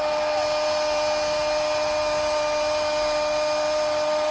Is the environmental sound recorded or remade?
recorded